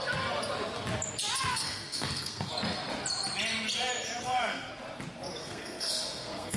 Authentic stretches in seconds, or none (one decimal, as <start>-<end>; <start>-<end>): 0.0-1.5; 2.5-4.2; 4.7-5.4